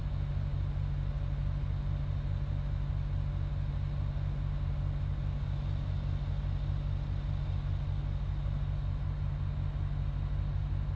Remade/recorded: recorded